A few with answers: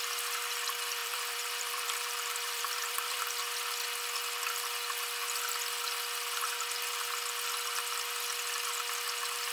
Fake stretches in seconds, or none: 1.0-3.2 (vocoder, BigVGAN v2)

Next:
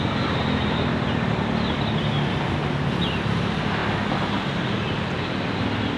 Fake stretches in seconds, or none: none

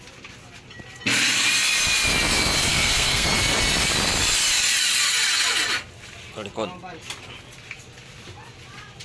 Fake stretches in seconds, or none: 2.7-3.3 (codec, SNAC)

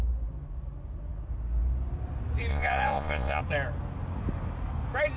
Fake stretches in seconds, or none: 2.5-3.4 (vocoder, Vocos)

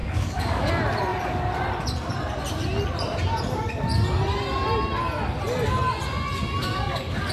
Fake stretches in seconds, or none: 0.0-0.7 (codec, DAC); 6.6-7.3